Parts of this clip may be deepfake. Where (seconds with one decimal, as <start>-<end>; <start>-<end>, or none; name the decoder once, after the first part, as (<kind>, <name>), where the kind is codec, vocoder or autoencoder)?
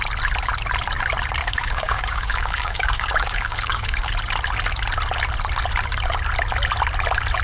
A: 1.4-4.1 (codec, DAC)